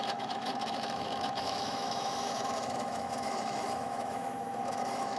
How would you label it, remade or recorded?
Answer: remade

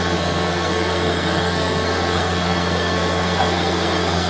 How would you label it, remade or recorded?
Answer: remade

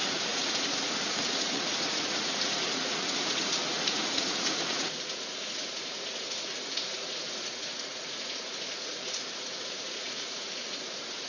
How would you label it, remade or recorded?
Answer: remade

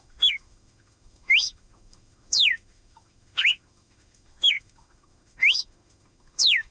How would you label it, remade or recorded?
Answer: remade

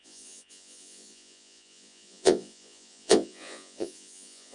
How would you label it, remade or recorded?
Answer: remade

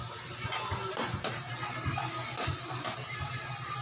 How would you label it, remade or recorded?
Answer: recorded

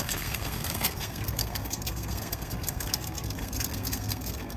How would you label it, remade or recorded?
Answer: remade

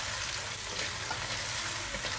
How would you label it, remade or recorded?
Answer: recorded